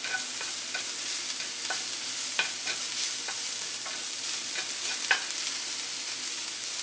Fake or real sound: real